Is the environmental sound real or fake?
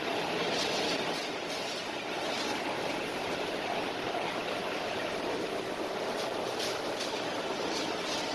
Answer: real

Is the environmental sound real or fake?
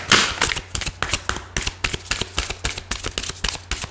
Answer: real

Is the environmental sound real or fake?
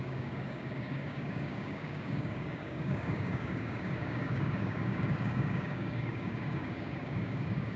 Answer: fake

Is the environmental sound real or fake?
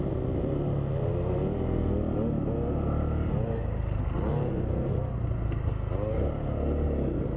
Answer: real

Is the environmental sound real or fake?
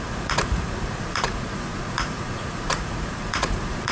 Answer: fake